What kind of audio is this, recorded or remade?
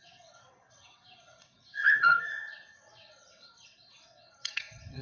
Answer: remade